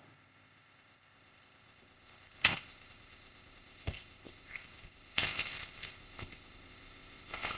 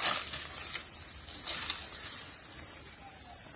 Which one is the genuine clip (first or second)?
second